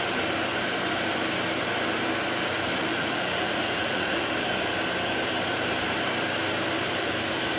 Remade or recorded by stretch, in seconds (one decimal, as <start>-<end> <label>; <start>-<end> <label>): 0.0-2.9 recorded; 2.9-4.3 remade; 4.3-7.6 recorded